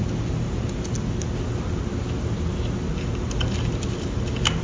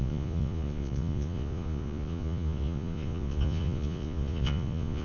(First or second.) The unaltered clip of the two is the first